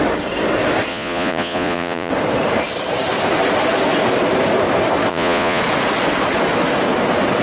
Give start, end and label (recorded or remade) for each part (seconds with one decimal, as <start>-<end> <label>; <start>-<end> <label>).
0.0-0.9 recorded; 0.9-2.1 remade; 2.1-5.1 recorded; 5.1-5.6 remade; 5.6-7.4 recorded